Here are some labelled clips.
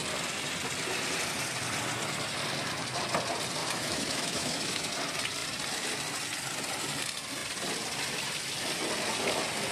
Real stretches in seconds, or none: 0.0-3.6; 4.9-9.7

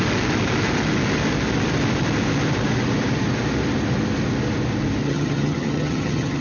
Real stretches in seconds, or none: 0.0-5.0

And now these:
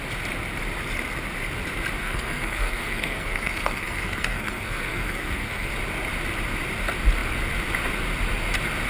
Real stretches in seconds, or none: 0.0-2.0; 5.7-8.9

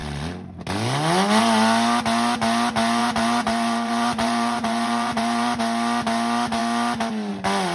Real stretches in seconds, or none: 0.0-3.0; 5.6-7.7